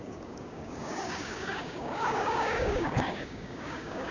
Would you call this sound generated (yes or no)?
yes